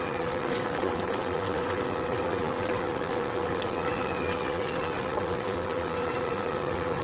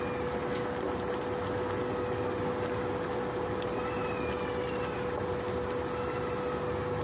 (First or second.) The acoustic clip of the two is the second